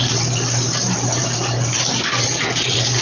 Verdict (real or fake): real